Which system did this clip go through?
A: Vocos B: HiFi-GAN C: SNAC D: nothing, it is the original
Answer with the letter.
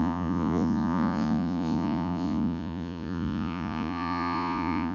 A